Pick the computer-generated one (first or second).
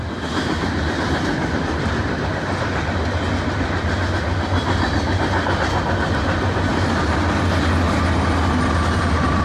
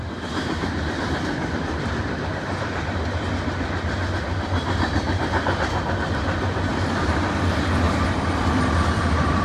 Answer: second